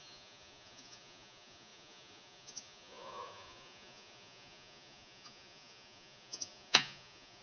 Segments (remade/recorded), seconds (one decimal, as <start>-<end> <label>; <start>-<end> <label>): 0.0-7.4 remade

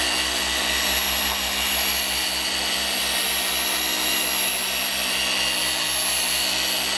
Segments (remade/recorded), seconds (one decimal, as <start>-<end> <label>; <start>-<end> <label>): 0.0-7.0 recorded

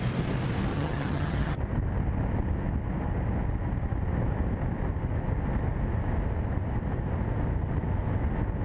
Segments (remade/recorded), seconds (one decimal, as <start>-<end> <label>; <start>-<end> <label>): 0.0-0.7 recorded; 0.7-1.6 remade; 1.6-8.6 recorded